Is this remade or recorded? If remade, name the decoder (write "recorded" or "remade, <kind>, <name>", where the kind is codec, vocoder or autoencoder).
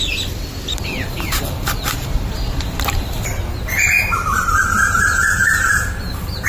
remade, vocoder, BigVGAN v2